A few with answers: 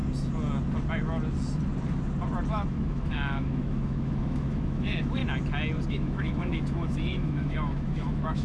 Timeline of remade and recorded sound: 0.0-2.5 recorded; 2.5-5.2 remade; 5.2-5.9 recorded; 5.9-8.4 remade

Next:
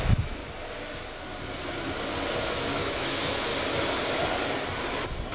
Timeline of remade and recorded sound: 0.0-0.4 remade; 0.4-2.4 recorded; 2.4-3.5 remade; 3.5-5.3 recorded